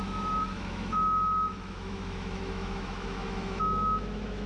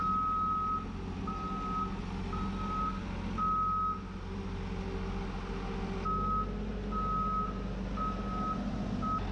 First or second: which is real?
second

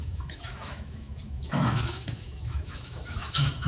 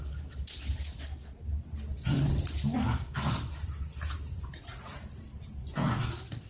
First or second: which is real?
second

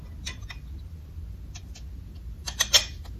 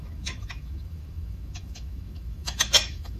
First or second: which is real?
first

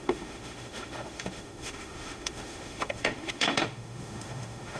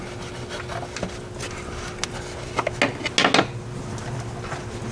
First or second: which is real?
second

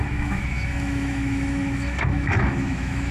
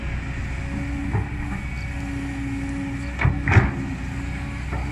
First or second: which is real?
second